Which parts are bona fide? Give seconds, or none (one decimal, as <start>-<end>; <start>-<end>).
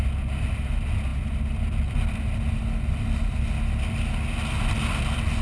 0.0-5.4